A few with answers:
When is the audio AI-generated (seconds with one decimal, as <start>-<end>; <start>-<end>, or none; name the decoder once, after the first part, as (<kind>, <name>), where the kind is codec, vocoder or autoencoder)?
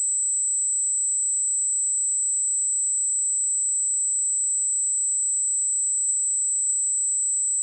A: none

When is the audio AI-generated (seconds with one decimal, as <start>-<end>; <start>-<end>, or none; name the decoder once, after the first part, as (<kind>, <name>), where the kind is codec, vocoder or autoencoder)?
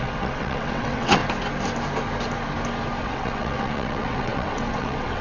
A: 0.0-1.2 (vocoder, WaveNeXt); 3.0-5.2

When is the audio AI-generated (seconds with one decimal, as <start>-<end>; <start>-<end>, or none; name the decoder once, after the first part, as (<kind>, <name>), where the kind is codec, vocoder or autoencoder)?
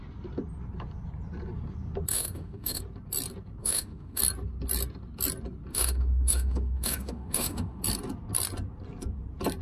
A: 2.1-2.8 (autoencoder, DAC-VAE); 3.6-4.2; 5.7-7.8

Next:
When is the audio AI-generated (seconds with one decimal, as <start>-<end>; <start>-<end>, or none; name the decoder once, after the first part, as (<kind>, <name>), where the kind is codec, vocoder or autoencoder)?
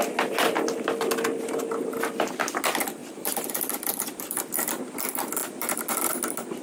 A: 3.0-4.4 (vocoder, BigVGAN v2)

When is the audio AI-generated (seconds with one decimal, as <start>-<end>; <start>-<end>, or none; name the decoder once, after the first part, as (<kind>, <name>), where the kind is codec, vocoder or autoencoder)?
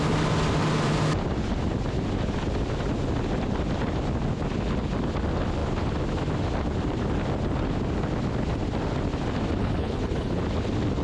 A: 9.6-10.4 (codec, HILCodec)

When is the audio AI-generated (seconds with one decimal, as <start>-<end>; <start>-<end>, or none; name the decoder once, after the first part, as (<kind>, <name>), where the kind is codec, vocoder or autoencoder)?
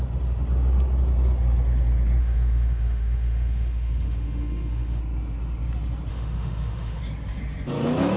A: 2.2-5.0 (autoencoder, DAC-VAE); 6.1-7.0